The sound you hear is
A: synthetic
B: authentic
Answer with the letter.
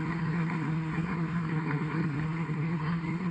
A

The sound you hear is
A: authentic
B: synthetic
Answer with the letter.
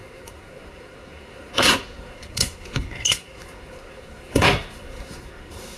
B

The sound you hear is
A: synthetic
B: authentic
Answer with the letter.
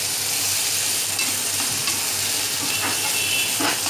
B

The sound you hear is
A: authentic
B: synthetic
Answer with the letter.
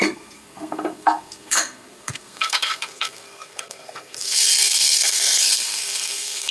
B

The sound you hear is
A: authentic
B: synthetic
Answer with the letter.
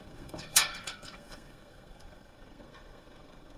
B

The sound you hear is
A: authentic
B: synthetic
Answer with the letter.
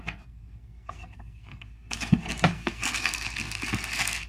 B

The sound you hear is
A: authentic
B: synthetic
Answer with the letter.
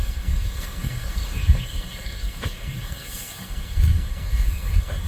B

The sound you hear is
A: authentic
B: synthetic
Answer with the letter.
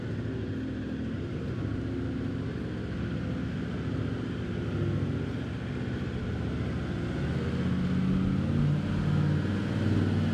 A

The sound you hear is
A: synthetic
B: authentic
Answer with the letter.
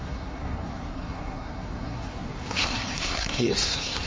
A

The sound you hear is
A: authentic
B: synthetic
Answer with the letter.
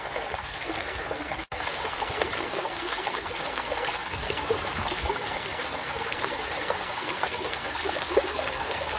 B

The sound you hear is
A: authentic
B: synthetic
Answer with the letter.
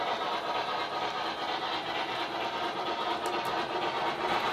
A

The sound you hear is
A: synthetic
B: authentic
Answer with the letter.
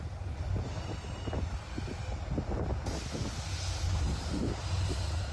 B